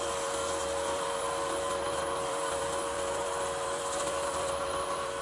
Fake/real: fake